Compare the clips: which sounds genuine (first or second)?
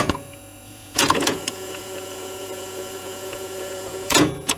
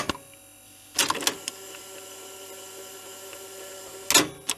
second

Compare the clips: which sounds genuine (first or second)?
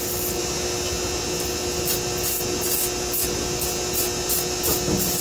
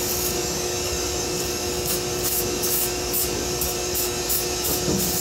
first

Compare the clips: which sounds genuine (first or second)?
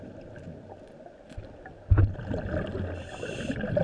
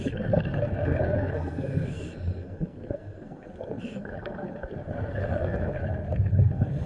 first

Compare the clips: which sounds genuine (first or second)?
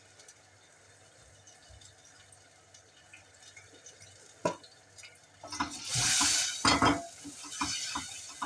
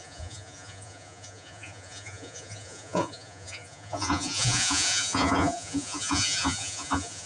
first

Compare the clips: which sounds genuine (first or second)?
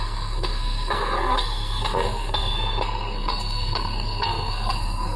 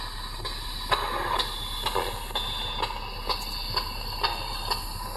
second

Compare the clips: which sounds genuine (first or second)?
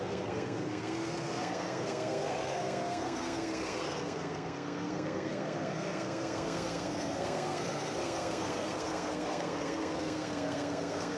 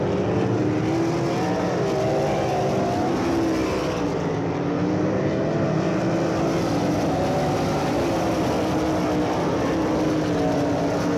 second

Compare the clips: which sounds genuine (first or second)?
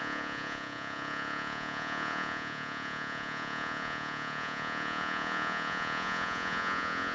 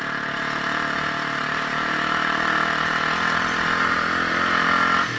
second